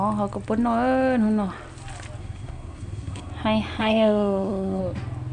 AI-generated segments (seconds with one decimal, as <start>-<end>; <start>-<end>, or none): 2.2-3.3; 3.8-4.8